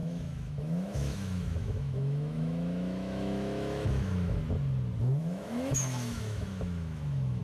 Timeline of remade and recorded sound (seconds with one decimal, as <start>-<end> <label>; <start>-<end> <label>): 0.0-4.4 remade; 4.4-5.2 recorded; 5.2-7.4 remade